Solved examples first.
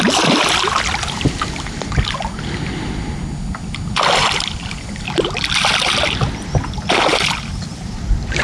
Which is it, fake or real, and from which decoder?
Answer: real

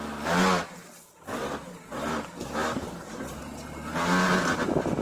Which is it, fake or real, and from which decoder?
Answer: real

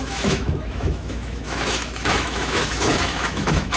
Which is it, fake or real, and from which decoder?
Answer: fake, autoencoder, DAC-VAE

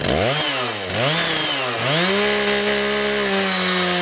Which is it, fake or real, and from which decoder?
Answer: real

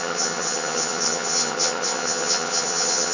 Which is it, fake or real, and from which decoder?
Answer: fake, vocoder, HiFi-GAN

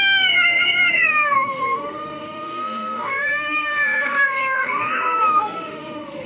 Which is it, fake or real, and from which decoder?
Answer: fake, autoencoder, DAC-VAE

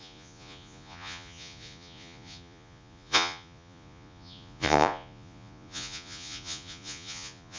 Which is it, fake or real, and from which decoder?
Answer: fake, vocoder, Vocos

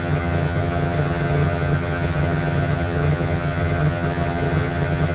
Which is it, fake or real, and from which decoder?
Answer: fake, vocoder, HiFi-GAN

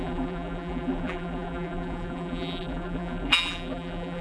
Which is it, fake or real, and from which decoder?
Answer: fake, vocoder, BigVGAN v2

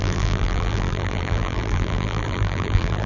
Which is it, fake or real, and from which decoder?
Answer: fake, vocoder, BigVGAN v2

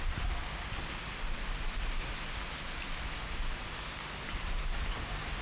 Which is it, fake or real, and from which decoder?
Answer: real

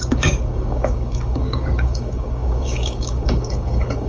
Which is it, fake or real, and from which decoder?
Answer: fake, codec, DAC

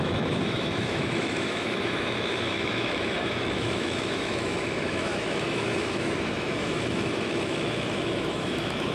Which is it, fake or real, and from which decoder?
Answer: fake, autoencoder, DAC-VAE